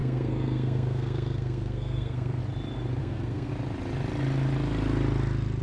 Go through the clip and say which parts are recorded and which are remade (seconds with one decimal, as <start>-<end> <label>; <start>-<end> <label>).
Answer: 0.0-2.4 remade; 2.4-3.0 recorded; 3.0-3.5 remade; 3.5-5.6 recorded